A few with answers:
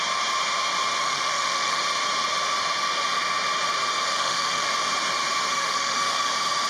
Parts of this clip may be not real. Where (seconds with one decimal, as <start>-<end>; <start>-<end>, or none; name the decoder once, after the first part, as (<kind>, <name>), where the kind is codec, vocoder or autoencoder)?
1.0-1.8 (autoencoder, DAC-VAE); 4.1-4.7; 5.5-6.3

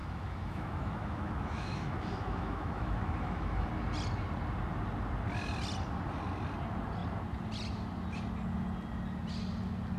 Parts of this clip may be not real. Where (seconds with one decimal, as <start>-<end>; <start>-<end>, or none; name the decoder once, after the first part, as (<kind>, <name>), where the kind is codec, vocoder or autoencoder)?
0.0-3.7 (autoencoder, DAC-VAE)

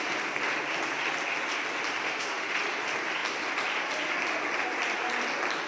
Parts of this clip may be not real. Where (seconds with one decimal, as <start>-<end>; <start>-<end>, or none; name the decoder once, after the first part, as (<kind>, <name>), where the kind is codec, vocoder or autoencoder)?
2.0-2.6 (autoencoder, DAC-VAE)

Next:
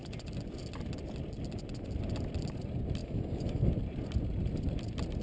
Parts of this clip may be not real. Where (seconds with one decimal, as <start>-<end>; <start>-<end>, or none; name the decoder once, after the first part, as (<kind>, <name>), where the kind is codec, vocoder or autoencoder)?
3.0-3.7 (autoencoder, DAC-VAE)